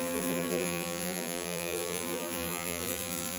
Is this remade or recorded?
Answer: remade